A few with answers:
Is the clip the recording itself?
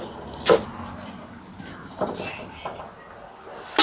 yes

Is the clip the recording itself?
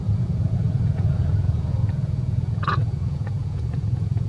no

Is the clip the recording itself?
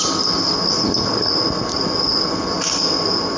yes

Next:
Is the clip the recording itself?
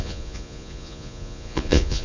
no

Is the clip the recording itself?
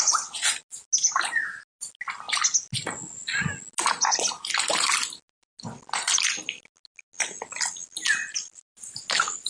yes